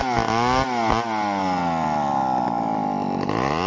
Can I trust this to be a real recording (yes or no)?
yes